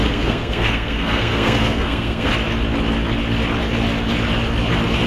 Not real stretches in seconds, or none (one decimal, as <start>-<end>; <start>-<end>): 0.0-2.3